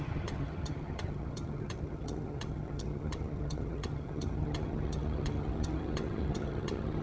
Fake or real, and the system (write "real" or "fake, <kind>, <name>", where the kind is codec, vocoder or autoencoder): fake, vocoder, HiFi-GAN